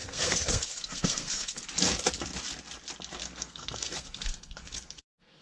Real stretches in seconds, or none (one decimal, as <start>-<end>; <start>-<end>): 1.6-3.2